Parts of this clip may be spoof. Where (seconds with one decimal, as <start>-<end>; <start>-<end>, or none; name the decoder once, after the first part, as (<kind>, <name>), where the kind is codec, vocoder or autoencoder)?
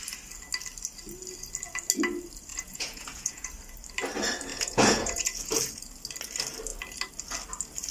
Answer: 2.5-3.5 (vocoder, Vocos); 4.5-5.6